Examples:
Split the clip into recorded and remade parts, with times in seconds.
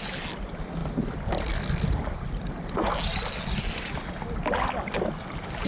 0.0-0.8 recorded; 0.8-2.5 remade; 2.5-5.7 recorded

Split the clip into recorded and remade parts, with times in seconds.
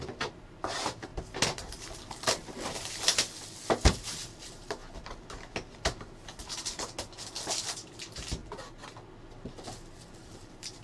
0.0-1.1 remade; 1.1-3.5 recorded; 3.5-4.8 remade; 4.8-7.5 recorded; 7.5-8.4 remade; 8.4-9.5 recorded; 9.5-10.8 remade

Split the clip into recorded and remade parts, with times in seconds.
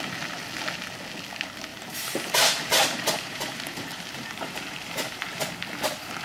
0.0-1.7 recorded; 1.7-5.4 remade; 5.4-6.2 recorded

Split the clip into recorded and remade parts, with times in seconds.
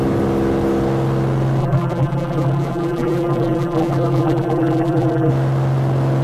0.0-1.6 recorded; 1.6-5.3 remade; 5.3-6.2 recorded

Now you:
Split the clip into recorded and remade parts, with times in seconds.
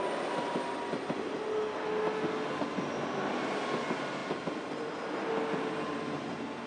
0.0-4.2 recorded; 4.2-4.9 remade; 4.9-6.7 recorded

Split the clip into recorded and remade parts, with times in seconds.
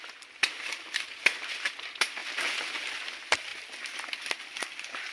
0.0-3.5 remade; 3.5-4.1 recorded; 4.1-5.1 remade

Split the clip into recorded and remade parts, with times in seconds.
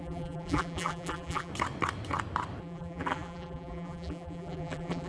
0.0-1.5 remade; 1.5-2.6 recorded; 2.6-5.1 remade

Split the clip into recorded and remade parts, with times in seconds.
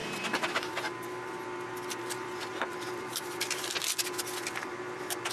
0.0-2.5 recorded; 2.5-3.6 remade; 3.6-5.3 recorded